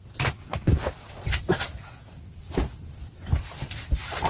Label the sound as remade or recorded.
recorded